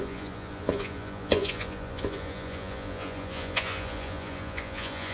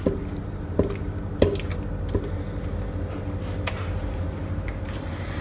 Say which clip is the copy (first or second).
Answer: first